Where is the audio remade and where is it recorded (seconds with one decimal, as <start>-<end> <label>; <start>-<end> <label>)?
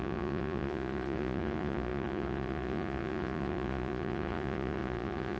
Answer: 0.0-5.4 remade